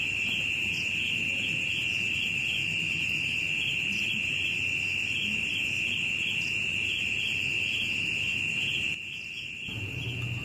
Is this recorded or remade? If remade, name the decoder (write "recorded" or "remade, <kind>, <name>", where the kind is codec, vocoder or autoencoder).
remade, vocoder, BigVGAN v2